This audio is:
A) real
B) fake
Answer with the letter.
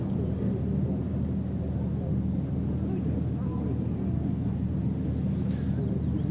A